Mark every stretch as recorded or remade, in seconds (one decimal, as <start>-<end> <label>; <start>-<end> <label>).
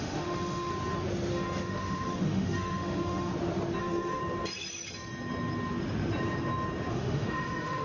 0.0-0.7 remade; 0.7-1.3 recorded; 1.3-3.3 remade; 3.3-3.8 recorded; 3.8-4.2 remade; 4.2-6.9 recorded; 6.9-7.8 remade